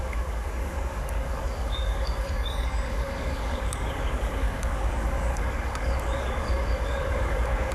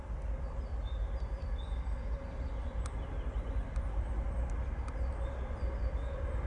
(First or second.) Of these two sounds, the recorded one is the second